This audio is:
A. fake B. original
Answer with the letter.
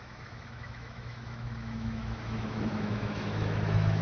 A